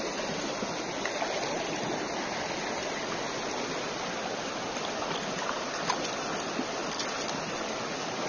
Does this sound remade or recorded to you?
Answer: recorded